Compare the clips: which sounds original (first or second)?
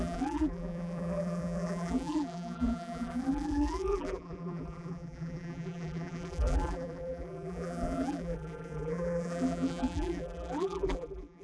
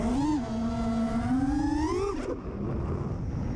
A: second